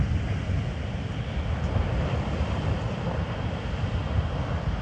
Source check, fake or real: fake